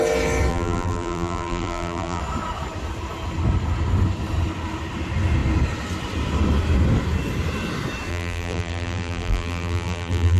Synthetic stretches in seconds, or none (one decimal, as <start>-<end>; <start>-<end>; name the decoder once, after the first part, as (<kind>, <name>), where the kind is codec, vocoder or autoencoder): 0.5-2.2 (vocoder, BigVGAN v2); 8.1-10.4